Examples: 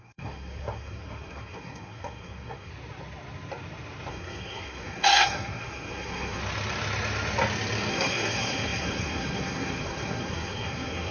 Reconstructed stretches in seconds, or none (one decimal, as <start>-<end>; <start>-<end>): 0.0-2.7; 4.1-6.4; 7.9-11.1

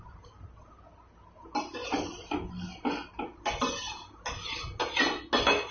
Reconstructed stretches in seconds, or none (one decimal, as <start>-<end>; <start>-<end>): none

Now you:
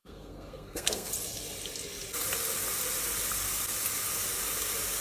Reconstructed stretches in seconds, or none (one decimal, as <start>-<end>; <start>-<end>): 0.0-1.1

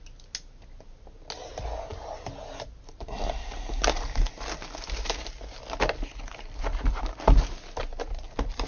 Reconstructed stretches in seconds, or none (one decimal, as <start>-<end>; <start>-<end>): none

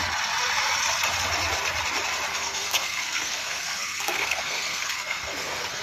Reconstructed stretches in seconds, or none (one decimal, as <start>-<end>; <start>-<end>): 2.3-5.8

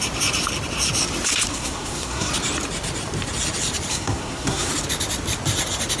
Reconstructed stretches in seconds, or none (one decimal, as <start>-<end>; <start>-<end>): 1.5-2.3; 3.9-4.7